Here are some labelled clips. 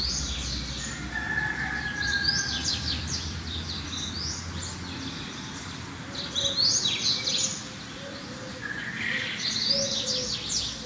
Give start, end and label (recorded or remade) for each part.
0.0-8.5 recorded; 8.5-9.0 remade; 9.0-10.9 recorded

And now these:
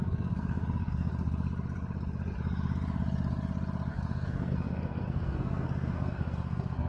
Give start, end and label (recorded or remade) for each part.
0.0-1.1 remade; 1.1-3.9 recorded; 3.9-6.9 remade

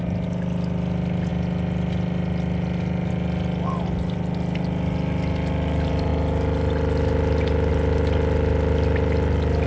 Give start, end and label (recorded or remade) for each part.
0.0-9.7 recorded

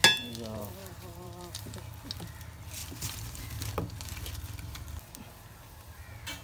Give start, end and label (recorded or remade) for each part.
0.0-0.8 recorded; 0.8-1.9 remade; 1.9-2.8 recorded; 2.8-3.4 remade; 3.4-6.4 recorded

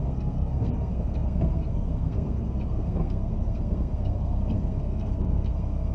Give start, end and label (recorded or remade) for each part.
0.0-5.9 remade

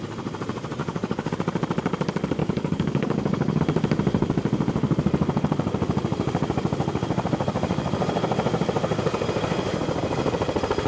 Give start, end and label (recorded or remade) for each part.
0.0-0.8 recorded; 0.8-1.3 remade; 1.3-2.4 recorded; 2.4-3.6 remade; 3.6-10.9 recorded